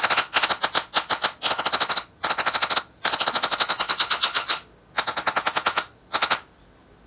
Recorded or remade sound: recorded